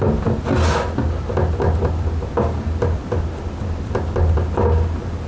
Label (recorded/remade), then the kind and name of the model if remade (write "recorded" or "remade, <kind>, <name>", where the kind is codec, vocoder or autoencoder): recorded